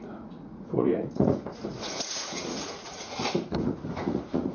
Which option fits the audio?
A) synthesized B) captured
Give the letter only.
A